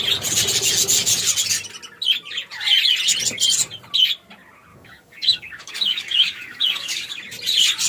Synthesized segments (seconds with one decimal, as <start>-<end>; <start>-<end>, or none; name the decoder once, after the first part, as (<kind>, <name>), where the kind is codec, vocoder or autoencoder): 4.7-7.2 (codec, DAC)